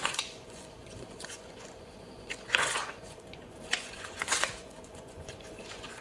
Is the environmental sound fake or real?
fake